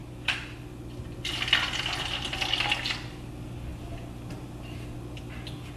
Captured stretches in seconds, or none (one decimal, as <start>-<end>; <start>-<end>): 0.0-5.8